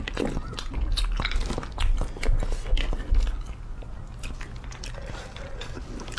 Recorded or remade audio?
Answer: recorded